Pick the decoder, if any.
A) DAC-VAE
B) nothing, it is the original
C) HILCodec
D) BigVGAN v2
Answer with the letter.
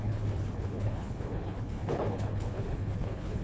C